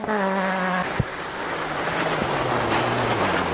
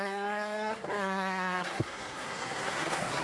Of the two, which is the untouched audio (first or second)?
first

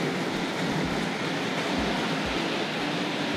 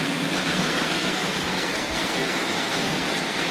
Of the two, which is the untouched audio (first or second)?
first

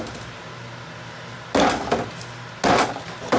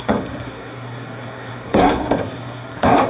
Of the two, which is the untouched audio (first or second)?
first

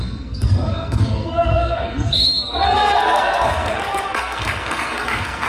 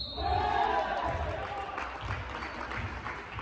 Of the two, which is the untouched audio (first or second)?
second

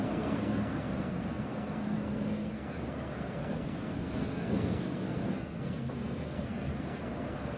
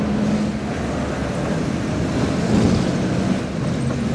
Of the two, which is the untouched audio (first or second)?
second